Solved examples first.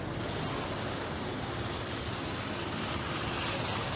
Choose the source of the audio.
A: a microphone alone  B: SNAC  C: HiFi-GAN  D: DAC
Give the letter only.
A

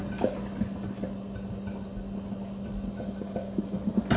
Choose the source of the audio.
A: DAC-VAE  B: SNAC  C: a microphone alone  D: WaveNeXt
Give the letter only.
C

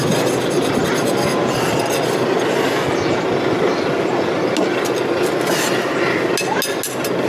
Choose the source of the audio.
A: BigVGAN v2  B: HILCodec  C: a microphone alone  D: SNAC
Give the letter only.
C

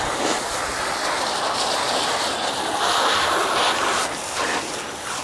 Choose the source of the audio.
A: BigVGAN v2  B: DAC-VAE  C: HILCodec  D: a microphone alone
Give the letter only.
D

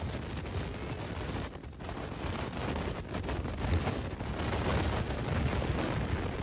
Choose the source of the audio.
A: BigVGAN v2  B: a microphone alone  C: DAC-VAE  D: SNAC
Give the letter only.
B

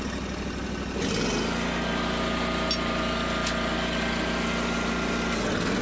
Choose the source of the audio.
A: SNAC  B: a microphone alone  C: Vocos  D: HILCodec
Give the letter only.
B